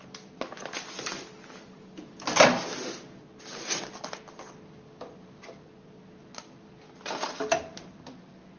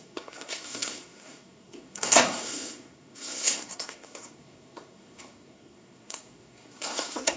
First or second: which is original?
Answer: first